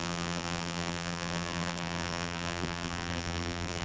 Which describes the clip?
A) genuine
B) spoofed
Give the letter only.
B